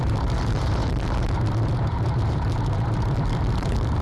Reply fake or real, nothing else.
fake